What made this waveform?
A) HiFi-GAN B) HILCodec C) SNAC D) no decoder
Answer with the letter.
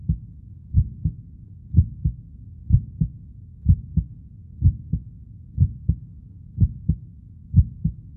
C